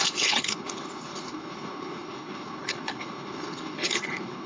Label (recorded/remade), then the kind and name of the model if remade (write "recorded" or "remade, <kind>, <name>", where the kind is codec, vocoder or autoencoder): remade, codec, HILCodec